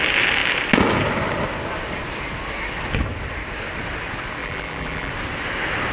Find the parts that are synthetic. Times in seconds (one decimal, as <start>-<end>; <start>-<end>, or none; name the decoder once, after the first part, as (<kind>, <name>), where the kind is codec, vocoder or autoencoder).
4.4-5.1 (vocoder, BigVGAN v2)